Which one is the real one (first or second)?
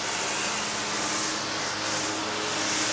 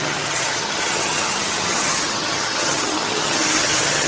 first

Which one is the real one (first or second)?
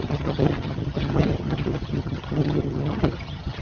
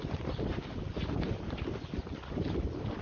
second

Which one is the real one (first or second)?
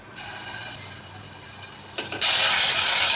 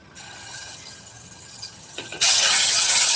first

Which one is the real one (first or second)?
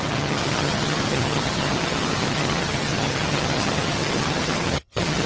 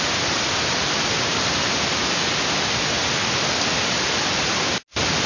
second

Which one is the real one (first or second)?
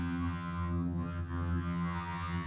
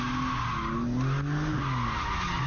second